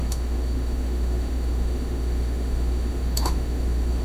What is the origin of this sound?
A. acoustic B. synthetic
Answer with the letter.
B